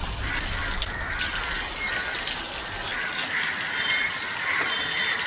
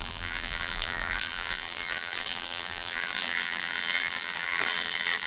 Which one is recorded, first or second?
first